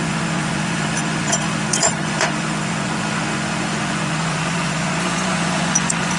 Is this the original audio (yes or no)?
no